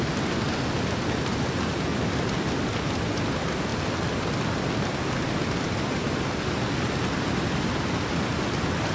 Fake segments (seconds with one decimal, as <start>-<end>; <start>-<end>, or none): none

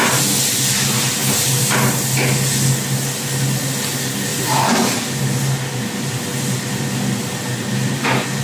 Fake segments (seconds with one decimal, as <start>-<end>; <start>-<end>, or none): none